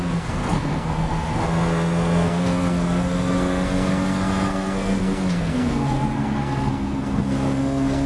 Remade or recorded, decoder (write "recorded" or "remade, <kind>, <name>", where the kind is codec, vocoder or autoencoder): remade, codec, SNAC